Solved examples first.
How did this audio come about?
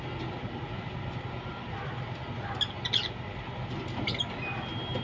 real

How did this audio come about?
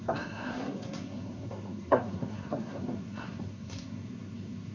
fake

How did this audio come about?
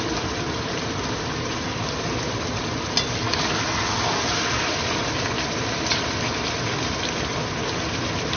real